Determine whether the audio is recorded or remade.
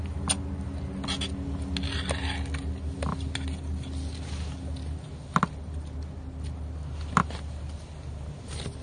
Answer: recorded